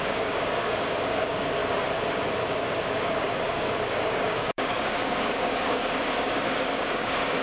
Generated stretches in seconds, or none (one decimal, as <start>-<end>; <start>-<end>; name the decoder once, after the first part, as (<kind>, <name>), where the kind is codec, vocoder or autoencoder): 0.0-1.6 (codec, DAC); 2.8-7.4

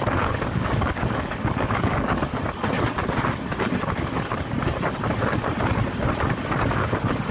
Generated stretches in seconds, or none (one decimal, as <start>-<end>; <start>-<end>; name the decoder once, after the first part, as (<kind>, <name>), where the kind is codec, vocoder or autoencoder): 0.0-2.3 (codec, DAC); 6.7-7.3

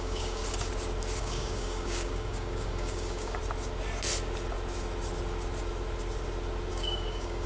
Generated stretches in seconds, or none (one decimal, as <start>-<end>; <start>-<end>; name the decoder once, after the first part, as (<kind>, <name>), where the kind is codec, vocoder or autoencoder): 0.0-0.4 (codec, DAC); 1.2-3.4; 6.7-7.5